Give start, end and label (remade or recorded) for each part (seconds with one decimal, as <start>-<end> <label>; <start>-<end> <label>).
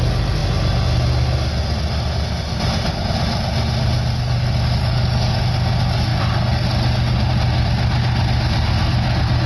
0.0-4.8 recorded; 4.8-5.4 remade; 5.4-9.5 recorded